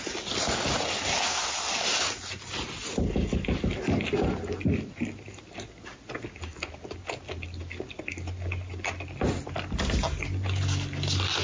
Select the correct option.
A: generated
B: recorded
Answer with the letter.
B